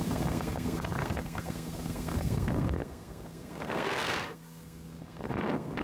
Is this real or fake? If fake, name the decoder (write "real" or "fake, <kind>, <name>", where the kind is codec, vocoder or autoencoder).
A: fake, codec, SNAC